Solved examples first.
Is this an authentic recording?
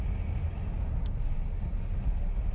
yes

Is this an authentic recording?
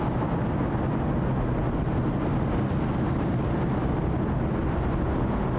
yes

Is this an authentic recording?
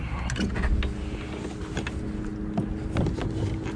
yes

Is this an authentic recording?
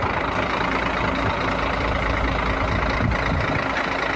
yes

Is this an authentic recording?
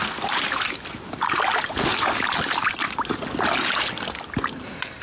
yes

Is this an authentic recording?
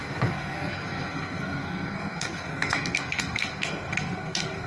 no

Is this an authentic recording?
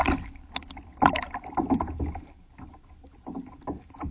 yes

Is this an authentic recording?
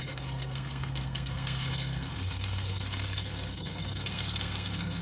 no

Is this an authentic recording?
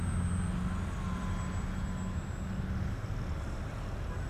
yes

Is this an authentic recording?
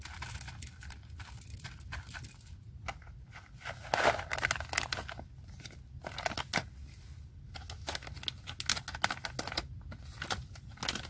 yes